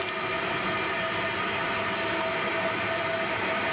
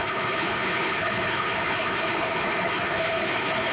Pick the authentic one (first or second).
first